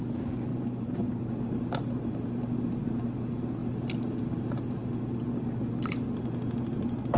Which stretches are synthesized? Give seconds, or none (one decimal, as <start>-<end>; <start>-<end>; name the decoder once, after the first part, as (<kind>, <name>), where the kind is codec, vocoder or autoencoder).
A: 0.5-1.1 (vocoder, Vocos)